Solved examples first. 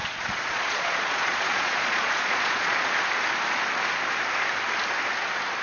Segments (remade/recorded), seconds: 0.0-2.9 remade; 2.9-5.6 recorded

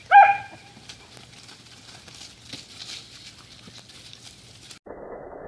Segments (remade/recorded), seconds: 0.0-5.5 recorded

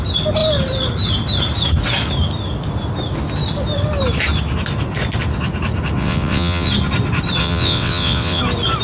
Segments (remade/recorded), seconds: 0.0-6.0 recorded; 6.0-6.7 remade; 6.7-7.4 recorded; 7.4-8.4 remade; 8.4-8.8 recorded

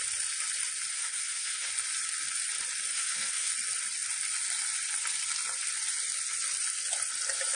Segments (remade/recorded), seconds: 0.0-0.9 recorded; 0.9-1.7 remade; 1.7-2.9 recorded; 2.9-3.5 remade; 3.5-7.6 recorded

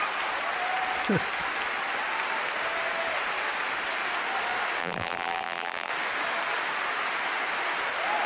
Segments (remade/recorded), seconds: 0.0-4.8 recorded; 4.8-5.9 remade; 5.9-8.3 recorded

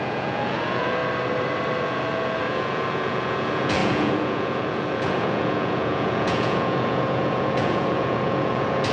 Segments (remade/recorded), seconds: 0.0-1.0 remade; 1.0-1.8 recorded; 1.8-8.9 remade

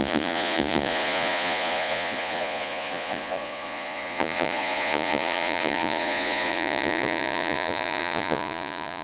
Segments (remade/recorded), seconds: 0.0-9.0 remade

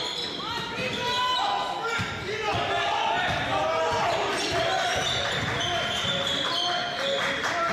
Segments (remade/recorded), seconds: 0.0-7.7 recorded